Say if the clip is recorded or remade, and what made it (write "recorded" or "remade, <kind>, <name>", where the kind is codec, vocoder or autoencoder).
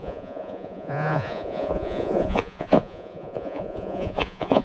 remade, vocoder, Vocos